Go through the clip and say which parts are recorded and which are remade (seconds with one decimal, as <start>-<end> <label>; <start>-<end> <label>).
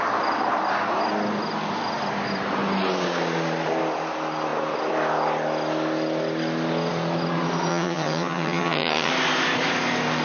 0.0-7.7 recorded; 7.7-9.1 remade; 9.1-10.2 recorded